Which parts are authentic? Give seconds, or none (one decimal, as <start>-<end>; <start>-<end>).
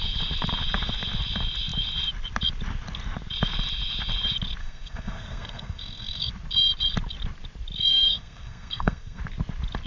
0.0-4.6; 6.3-7.9; 9.2-9.9